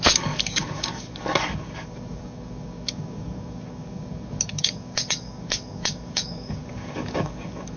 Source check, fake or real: fake